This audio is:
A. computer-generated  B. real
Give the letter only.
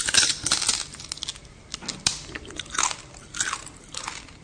B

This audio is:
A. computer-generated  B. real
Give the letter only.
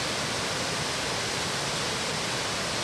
B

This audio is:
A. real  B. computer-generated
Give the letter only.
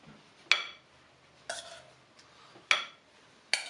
A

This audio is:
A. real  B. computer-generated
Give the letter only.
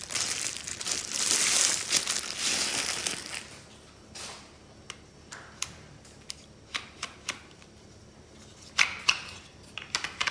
A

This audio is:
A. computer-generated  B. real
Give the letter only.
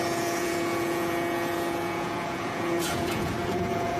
A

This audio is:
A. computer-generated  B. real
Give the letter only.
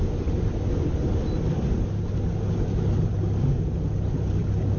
B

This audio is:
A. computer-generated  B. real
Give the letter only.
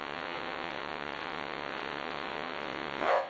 A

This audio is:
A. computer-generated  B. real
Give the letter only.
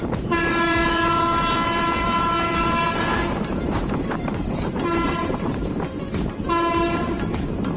A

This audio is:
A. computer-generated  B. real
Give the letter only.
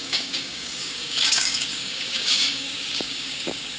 A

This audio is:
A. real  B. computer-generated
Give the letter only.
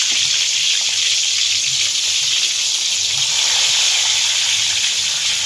A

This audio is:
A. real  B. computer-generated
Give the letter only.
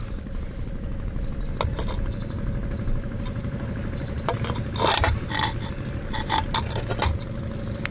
A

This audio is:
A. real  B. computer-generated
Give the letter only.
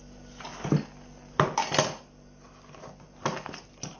A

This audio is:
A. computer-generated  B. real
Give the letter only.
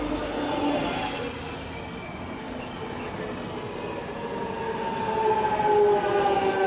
B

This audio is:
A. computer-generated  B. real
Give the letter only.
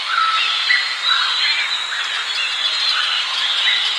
B